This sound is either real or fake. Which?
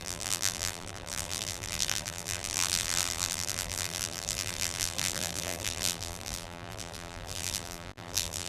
fake